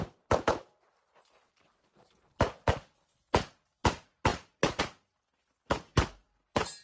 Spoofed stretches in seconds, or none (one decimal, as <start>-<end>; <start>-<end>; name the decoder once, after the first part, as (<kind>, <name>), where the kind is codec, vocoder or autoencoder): 4.3-4.8 (vocoder, BigVGAN v2)